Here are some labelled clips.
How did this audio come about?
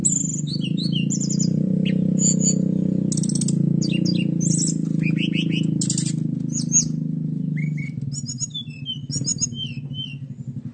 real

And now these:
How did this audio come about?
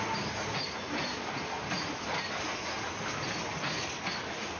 real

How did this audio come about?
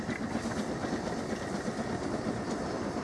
real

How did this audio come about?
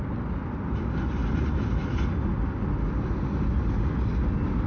real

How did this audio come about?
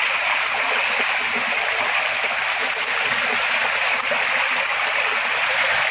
real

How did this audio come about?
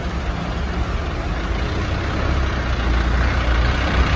real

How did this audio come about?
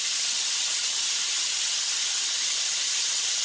real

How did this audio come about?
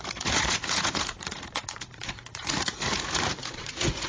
fake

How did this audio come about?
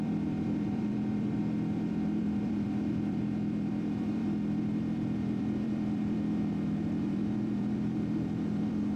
fake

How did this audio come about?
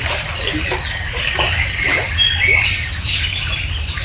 real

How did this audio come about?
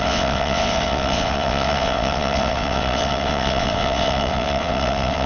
fake